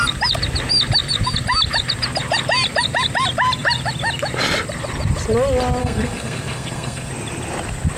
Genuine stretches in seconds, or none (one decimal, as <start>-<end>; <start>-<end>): 0.0-5.8; 7.1-8.0